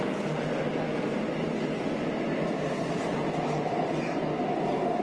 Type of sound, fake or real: real